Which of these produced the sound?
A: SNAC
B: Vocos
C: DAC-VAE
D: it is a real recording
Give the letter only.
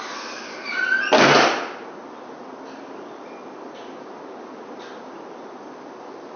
D